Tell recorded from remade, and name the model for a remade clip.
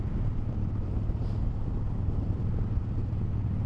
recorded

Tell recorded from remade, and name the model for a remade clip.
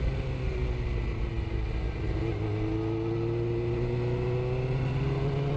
recorded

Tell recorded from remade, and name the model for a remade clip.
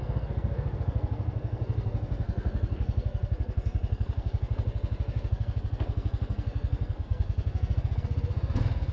remade, codec, SNAC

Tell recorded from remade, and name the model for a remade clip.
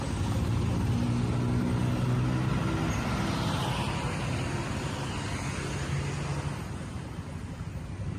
recorded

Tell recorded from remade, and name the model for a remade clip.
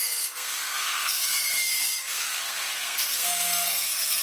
remade, codec, SNAC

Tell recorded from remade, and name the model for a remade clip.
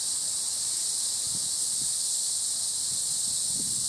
recorded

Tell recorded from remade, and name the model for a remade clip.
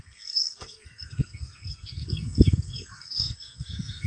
remade, codec, SNAC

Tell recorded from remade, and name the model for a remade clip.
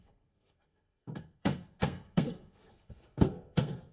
remade, codec, SNAC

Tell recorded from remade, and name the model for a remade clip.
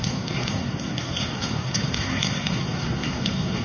remade, codec, SNAC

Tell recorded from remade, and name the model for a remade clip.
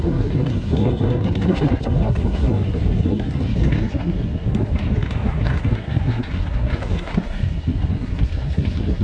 remade, codec, SNAC